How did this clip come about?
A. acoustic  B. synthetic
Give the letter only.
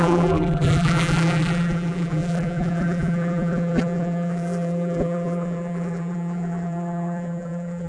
B